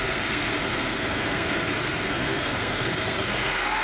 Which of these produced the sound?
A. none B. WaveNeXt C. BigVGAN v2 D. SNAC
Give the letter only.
D